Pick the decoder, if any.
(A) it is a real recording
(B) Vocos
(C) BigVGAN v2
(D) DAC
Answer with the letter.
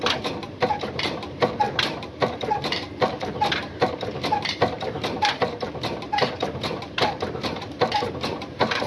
C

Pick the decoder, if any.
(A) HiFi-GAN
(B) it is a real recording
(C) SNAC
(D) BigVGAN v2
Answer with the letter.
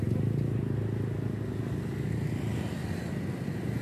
B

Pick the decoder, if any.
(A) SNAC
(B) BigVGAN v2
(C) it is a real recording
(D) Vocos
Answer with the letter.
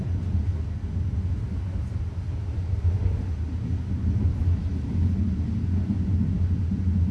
C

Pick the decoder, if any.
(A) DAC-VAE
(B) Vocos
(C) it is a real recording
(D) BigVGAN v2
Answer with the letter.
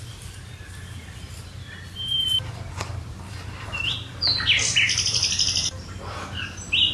D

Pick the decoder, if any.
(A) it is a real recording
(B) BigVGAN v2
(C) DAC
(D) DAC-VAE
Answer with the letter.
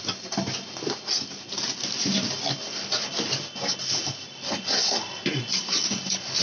A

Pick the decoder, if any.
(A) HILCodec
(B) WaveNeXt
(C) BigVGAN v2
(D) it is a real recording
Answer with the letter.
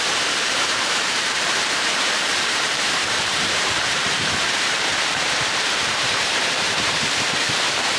C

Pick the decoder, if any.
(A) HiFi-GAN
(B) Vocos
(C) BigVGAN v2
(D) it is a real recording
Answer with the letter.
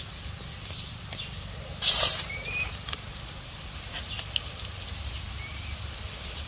C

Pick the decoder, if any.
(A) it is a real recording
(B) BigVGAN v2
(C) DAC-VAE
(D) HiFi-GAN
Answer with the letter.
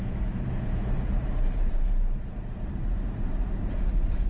B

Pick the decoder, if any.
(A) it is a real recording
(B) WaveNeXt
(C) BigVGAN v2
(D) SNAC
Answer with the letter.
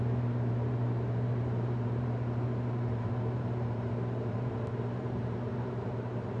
C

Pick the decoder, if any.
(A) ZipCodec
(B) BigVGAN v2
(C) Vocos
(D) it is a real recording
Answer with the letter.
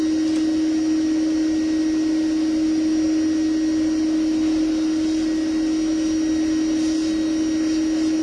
D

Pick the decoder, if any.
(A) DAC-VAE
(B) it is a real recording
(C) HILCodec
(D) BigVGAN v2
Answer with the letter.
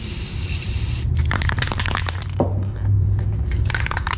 D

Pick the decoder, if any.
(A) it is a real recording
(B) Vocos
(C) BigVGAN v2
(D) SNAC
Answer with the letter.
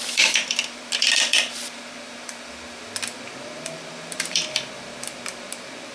C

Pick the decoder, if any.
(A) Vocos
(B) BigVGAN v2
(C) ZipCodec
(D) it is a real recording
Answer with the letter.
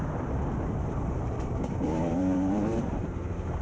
B